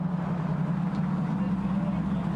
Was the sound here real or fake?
real